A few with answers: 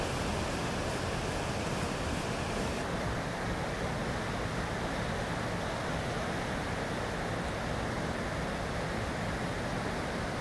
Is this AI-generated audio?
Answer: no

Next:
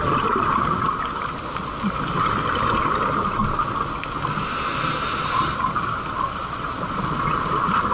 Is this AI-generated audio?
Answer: no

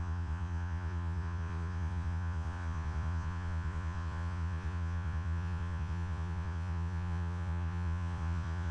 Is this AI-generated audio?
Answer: yes